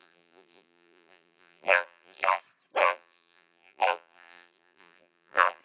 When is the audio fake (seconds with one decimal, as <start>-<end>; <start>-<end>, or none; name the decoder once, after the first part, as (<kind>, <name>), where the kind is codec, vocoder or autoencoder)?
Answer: 0.0-2.4 (vocoder, BigVGAN v2); 2.8-5.6